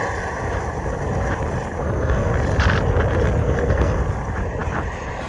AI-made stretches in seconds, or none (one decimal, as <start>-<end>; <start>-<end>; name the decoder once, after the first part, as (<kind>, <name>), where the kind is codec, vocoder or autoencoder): 1.8-2.3 (codec, SNAC); 3.4-4.0